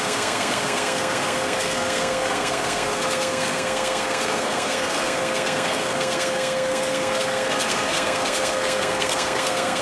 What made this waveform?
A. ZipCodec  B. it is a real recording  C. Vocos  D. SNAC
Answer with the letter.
D